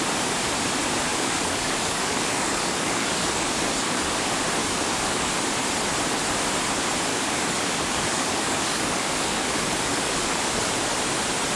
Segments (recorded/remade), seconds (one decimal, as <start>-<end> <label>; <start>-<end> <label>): 0.0-1.1 recorded; 1.1-4.1 remade; 4.1-4.6 recorded; 4.6-5.3 remade; 5.3-7.1 recorded; 7.1-10.7 remade; 10.7-11.6 recorded